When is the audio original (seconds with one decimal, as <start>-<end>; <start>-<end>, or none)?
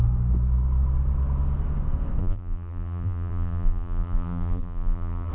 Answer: 0.0-2.2